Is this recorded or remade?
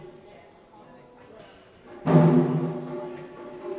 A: recorded